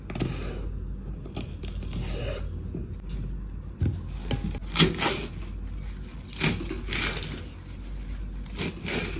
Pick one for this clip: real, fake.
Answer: real